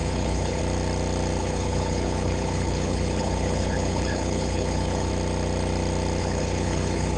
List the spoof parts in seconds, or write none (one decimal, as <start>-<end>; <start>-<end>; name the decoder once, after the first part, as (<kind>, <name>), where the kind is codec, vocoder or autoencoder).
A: 0.0-0.6 (codec, HILCodec); 1.4-5.1; 6.2-7.2